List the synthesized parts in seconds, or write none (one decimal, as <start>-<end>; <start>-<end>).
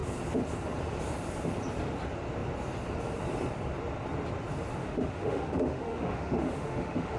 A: 4.8-7.2